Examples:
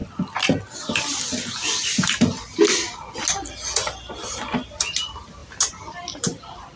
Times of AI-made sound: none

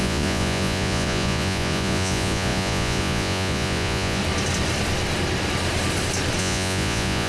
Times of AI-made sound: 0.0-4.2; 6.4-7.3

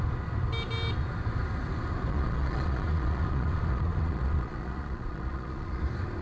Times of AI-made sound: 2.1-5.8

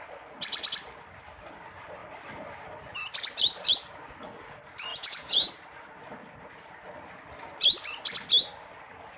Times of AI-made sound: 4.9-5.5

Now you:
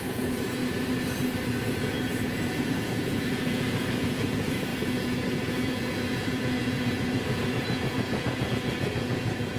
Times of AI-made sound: 0.0-0.6; 1.6-9.6